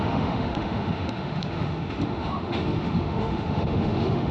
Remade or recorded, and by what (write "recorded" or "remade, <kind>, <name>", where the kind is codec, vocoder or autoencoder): remade, autoencoder, DAC-VAE